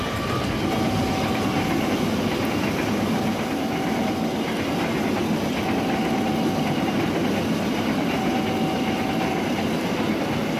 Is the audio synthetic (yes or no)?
no